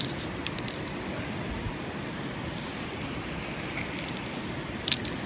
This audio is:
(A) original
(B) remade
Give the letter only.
B